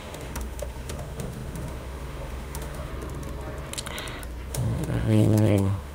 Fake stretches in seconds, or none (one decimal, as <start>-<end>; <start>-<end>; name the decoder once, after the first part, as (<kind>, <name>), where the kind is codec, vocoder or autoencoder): 0.0-2.9 (autoencoder, DAC-VAE); 4.5-5.9